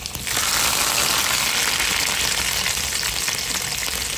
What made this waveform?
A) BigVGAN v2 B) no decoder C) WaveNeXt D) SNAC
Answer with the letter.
B